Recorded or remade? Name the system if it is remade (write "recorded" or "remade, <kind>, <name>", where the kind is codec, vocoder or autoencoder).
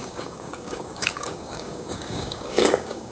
remade, codec, DAC